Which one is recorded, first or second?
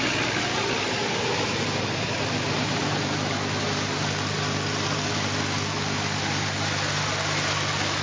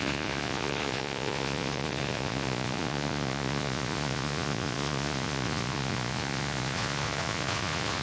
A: first